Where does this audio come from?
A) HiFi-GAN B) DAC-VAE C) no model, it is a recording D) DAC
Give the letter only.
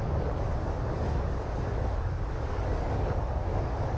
D